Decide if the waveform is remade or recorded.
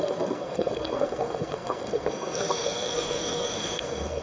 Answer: remade